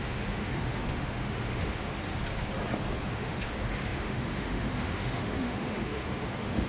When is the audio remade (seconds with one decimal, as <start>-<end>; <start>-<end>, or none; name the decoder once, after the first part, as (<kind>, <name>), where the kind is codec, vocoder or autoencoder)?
0.0-1.9 (autoencoder, DAC-VAE); 3.0-6.7